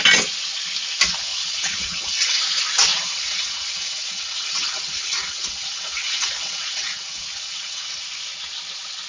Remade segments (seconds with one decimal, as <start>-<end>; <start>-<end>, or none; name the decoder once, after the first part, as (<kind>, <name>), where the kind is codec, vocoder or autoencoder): 1.3-2.4 (vocoder, WaveNeXt); 2.9-8.0